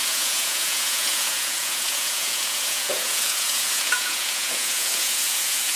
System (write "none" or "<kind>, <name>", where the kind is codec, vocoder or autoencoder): vocoder, Vocos